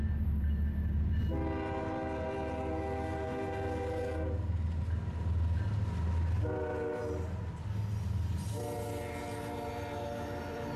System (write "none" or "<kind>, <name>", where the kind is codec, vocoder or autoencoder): none